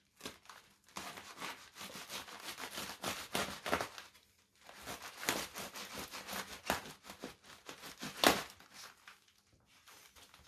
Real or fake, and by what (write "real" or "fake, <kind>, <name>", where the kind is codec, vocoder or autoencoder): real